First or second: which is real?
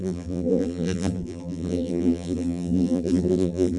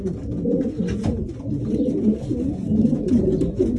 second